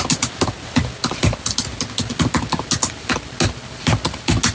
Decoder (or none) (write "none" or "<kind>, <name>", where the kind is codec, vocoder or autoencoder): none